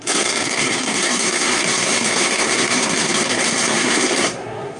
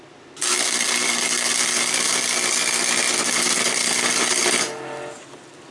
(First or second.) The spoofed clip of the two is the first